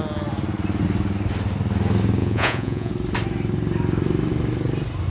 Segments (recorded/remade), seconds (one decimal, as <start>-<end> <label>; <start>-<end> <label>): 0.0-2.2 recorded; 2.2-2.9 remade; 2.9-5.1 recorded